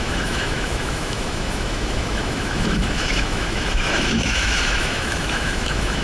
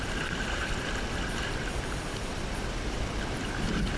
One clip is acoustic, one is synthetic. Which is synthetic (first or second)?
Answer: first